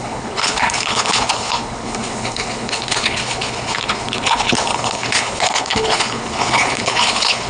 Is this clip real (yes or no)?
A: no